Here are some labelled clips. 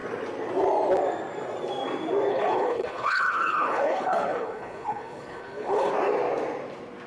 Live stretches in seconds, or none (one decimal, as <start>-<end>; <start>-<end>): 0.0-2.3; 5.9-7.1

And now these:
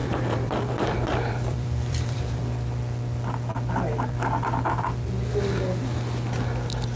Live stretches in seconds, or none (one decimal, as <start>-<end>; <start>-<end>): 2.4-7.0

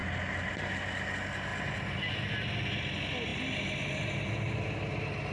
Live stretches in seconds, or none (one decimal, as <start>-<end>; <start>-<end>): 0.0-5.3

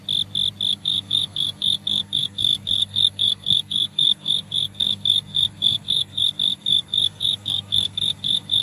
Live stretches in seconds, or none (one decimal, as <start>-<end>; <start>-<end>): 0.0-0.7